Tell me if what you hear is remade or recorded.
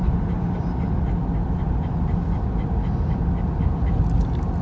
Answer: recorded